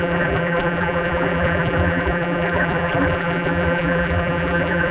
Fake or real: fake